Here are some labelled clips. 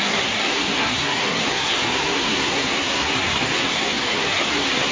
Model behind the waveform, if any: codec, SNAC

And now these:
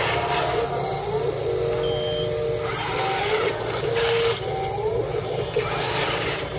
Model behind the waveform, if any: none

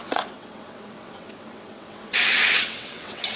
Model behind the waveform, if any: vocoder, WaveNeXt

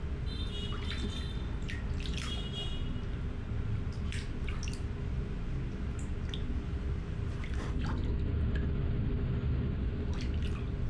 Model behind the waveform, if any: none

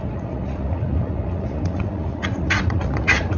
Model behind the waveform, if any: vocoder, Vocos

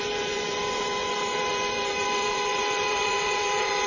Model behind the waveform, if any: vocoder, Vocos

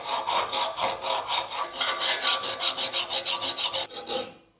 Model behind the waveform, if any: none